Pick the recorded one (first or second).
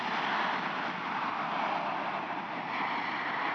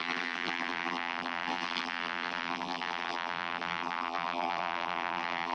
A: first